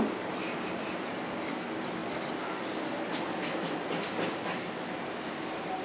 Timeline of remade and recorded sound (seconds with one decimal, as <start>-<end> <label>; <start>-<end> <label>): 0.0-5.8 recorded